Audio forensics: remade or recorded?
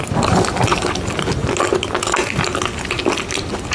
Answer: recorded